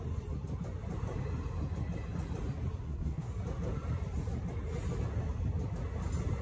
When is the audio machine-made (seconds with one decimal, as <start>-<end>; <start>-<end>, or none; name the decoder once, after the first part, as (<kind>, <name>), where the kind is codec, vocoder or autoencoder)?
2.8-3.3 (codec, SNAC)